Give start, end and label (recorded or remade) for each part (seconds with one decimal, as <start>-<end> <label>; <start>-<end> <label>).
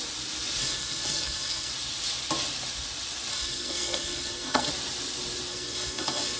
0.0-0.6 recorded; 0.6-1.7 remade; 1.7-3.3 recorded; 3.3-4.7 remade; 4.7-5.5 recorded; 5.5-6.4 remade